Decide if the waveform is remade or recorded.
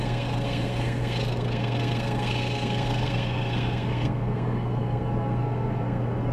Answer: remade